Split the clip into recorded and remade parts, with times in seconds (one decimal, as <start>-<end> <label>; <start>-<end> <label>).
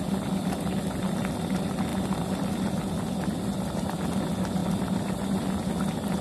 0.0-6.2 recorded